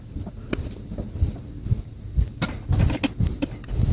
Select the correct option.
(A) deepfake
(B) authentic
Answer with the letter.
B